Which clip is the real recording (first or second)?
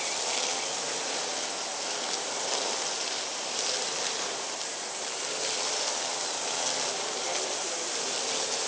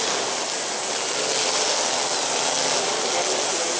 second